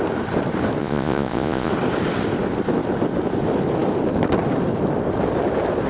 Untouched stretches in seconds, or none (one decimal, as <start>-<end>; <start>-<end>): 0.0-0.8; 1.7-5.9